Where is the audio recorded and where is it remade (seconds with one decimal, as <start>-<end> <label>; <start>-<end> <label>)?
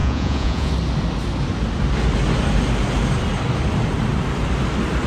0.0-0.7 remade; 0.7-5.1 recorded